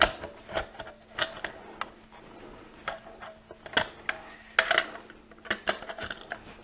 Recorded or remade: recorded